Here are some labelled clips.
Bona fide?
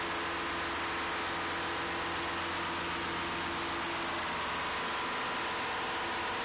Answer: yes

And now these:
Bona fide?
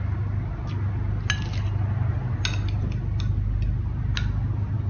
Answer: yes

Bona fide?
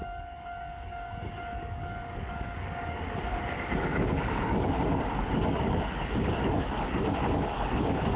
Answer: no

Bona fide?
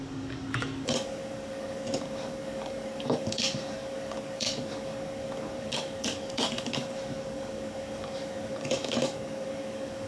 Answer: no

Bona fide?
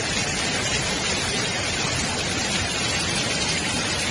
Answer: no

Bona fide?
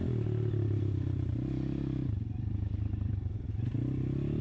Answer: yes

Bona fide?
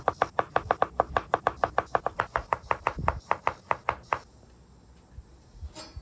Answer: yes